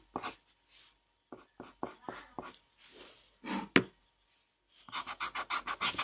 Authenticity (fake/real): real